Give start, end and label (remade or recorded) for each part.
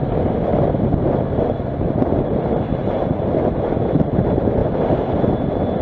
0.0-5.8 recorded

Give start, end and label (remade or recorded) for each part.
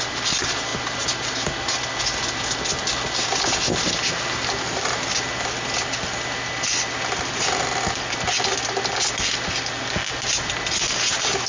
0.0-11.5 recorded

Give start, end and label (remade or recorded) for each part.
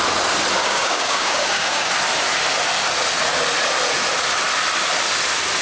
0.0-0.6 recorded; 0.6-1.9 remade; 1.9-5.6 recorded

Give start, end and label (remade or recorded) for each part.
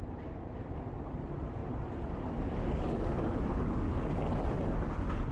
0.0-2.6 recorded; 2.6-4.1 remade; 4.1-5.3 recorded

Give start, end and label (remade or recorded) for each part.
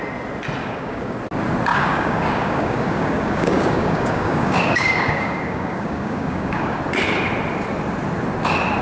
0.0-0.6 recorded; 0.6-1.2 remade; 1.2-1.7 recorded; 1.7-6.8 remade; 6.8-8.8 recorded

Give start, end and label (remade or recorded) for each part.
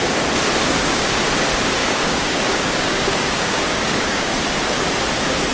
0.0-0.6 recorded; 0.6-1.2 remade; 1.2-1.8 recorded; 1.8-4.3 remade; 4.3-5.5 recorded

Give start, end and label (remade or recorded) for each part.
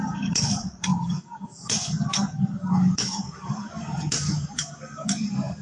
0.0-5.6 remade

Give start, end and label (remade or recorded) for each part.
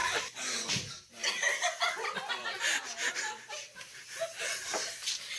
0.0-0.7 remade; 0.7-5.4 recorded